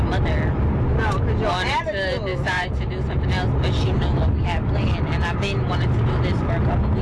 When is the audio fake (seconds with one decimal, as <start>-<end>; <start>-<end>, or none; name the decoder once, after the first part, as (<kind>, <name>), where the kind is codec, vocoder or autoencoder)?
2.3-3.2 (vocoder, Vocos)